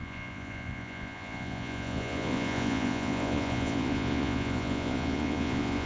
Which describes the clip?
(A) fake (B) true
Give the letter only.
A